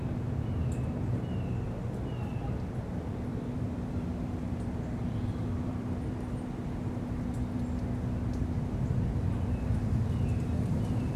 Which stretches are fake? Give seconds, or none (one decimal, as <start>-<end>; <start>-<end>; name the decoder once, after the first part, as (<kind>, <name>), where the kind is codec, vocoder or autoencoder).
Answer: 3.3-5.9 (vocoder, BigVGAN v2)